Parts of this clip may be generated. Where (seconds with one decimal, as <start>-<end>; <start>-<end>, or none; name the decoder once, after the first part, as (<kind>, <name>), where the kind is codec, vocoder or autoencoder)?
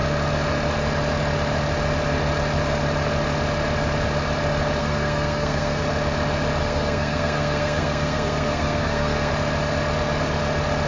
4.8-5.8 (codec, SNAC); 6.6-9.3